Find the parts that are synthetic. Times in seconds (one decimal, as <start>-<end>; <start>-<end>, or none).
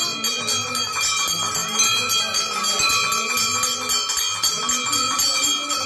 none